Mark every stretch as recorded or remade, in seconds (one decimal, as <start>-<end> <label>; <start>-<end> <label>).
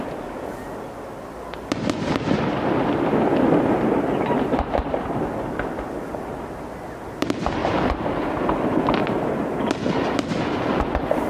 0.0-11.3 recorded